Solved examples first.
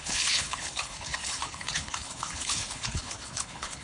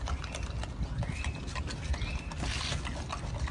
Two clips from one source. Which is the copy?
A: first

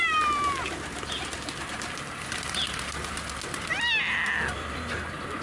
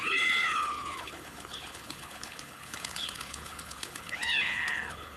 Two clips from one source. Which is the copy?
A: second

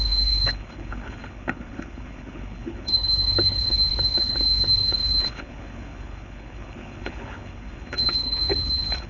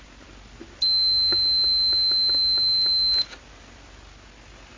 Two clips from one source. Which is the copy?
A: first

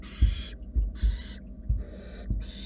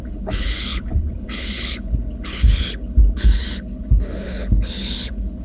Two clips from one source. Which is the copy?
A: second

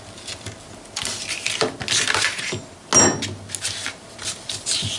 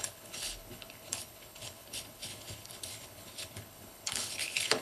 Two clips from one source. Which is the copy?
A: second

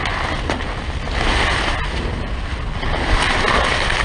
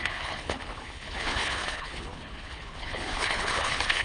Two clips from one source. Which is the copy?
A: second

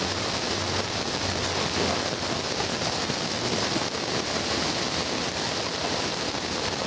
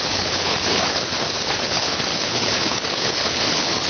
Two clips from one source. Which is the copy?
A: second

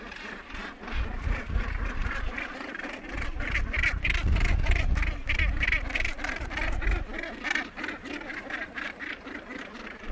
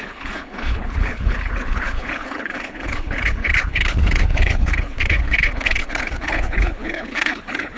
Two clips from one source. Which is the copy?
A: second